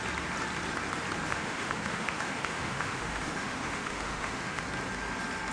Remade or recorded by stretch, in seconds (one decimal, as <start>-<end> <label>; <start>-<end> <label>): 0.0-1.3 recorded; 1.3-4.6 remade; 4.6-5.5 recorded

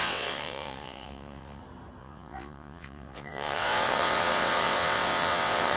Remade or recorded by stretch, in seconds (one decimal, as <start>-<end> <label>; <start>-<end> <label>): 0.0-1.6 remade; 1.6-2.0 recorded; 2.0-5.8 remade

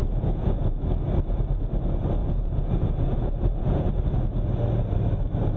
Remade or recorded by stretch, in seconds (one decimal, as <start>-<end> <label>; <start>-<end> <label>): 0.0-0.9 remade; 0.9-2.2 recorded; 2.2-3.9 remade; 3.9-5.6 recorded

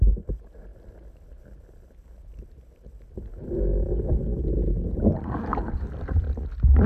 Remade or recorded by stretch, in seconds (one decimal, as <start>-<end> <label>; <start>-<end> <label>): 0.0-5.5 recorded; 5.5-6.9 remade